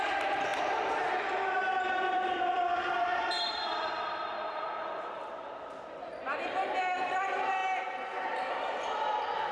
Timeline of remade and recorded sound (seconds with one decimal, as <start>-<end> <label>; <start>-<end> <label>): 0.0-0.5 remade; 0.5-2.1 recorded; 2.1-7.6 remade; 7.6-8.5 recorded; 8.5-9.5 remade

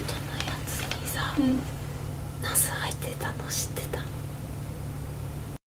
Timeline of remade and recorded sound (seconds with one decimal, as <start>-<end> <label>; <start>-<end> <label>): 0.0-3.1 remade; 3.1-4.1 recorded; 4.1-5.7 remade

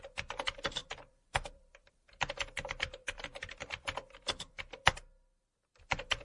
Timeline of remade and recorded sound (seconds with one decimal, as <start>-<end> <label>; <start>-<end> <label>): 0.0-4.9 remade; 4.9-5.8 recorded; 5.8-6.2 remade

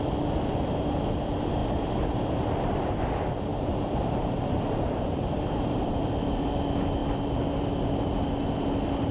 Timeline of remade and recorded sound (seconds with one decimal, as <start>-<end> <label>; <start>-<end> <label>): 0.0-1.6 recorded; 1.6-3.0 remade; 3.0-3.5 recorded; 3.5-6.0 remade; 6.0-9.1 recorded

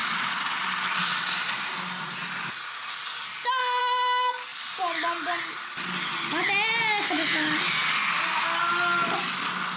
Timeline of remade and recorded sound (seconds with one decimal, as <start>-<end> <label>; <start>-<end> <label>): 0.0-9.8 recorded

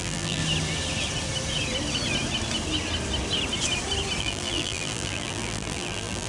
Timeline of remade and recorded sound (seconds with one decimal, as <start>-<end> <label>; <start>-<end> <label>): 0.0-0.4 remade; 0.4-4.2 recorded; 4.2-6.3 remade

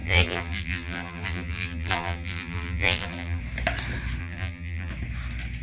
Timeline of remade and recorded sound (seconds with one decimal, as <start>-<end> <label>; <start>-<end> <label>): 0.0-3.4 remade; 3.4-4.2 recorded; 4.2-4.9 remade; 4.9-5.6 recorded